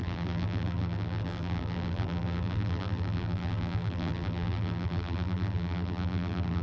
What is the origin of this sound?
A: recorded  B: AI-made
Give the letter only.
B